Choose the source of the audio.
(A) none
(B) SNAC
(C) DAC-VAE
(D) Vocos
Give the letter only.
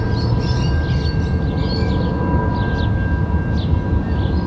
A